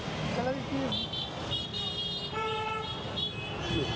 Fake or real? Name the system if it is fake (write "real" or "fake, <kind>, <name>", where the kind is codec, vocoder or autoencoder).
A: real